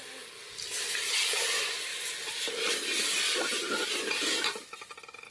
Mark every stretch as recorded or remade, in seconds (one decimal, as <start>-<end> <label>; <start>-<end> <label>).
0.0-5.3 recorded